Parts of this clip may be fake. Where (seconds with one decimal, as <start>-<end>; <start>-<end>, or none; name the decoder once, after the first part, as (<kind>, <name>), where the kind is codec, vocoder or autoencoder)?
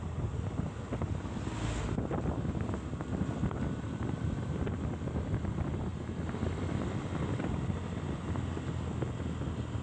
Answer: none